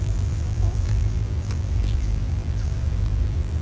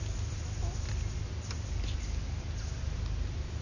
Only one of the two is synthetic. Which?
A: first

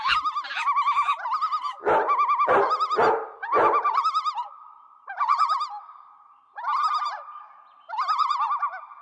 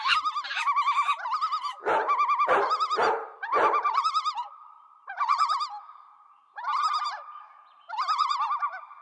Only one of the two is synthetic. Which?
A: second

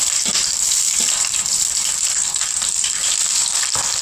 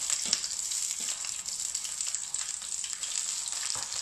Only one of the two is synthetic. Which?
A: first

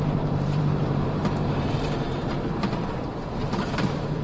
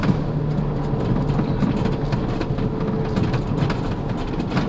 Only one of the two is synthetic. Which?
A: first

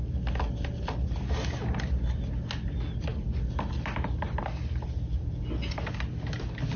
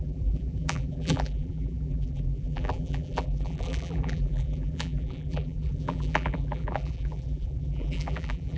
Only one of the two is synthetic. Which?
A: second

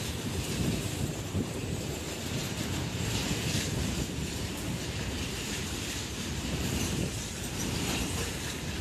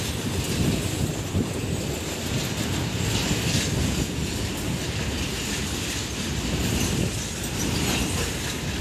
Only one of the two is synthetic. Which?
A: first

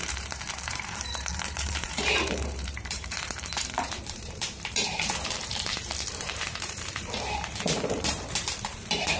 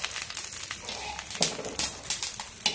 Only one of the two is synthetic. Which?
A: first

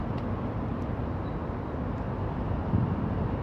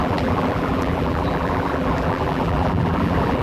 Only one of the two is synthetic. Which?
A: second